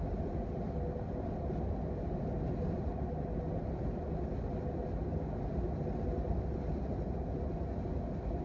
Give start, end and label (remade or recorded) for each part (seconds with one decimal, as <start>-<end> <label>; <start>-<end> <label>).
0.0-8.4 recorded